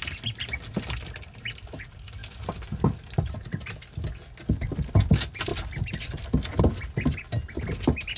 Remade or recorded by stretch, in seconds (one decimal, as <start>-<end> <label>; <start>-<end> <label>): 0.0-8.2 recorded